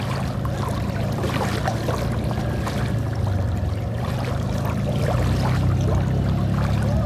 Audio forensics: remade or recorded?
recorded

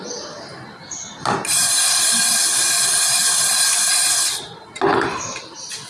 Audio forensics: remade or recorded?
recorded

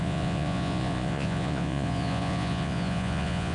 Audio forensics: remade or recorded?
remade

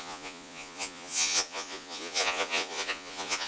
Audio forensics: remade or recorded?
remade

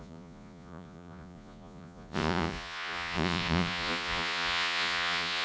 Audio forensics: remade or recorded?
remade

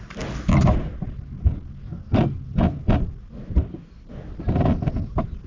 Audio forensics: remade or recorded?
recorded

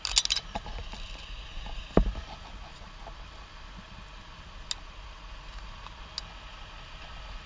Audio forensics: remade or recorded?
recorded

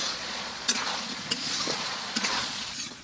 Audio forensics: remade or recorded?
remade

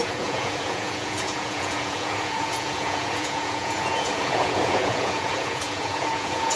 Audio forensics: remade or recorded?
remade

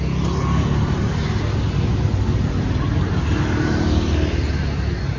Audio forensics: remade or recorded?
recorded